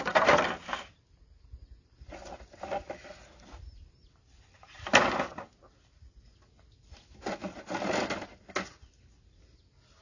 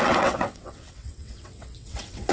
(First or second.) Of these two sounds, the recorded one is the first